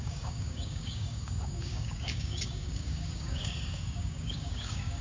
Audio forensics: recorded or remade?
remade